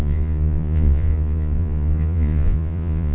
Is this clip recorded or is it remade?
remade